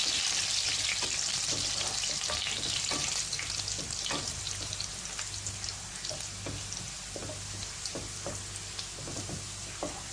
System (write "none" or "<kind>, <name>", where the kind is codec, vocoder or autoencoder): none